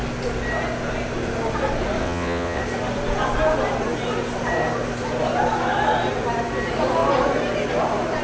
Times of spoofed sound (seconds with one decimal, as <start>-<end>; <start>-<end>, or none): 2.0-2.6

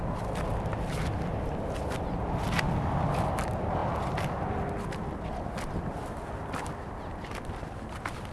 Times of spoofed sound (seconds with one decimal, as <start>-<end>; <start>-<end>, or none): none